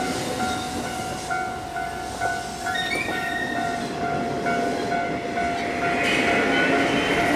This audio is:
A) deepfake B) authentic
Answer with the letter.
B